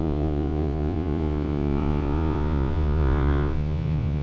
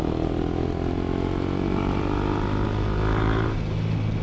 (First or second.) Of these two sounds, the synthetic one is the first